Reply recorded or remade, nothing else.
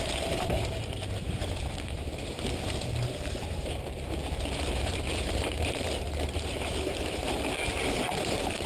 remade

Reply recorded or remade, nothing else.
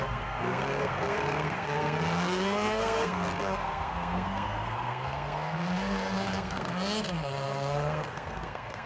remade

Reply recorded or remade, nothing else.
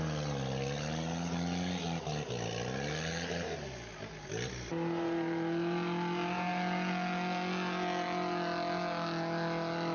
recorded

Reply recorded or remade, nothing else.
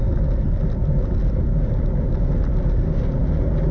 recorded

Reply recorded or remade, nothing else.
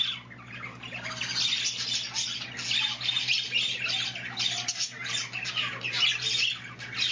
recorded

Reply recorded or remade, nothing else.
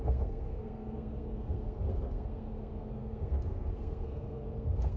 remade